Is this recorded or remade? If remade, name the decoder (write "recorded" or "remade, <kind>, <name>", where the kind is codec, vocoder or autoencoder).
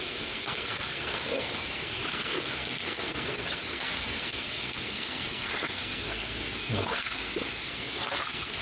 remade, codec, SNAC